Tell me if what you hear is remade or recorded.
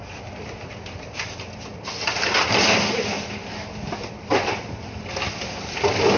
recorded